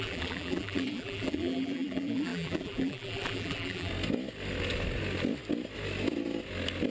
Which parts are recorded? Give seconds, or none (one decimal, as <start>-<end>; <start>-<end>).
3.9-6.9